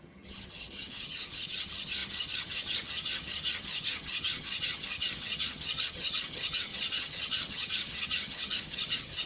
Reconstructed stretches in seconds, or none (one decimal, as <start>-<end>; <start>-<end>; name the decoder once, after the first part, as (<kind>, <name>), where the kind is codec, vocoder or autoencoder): 0.0-9.3 (vocoder, HiFi-GAN)